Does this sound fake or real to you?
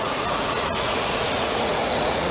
fake